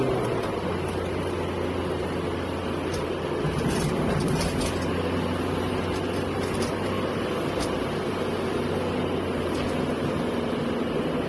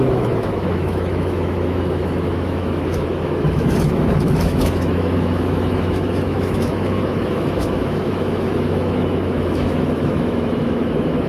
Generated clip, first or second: second